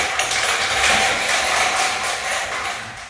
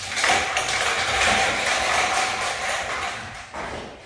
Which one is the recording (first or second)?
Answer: first